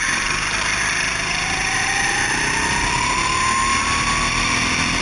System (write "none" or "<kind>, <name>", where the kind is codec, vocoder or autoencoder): none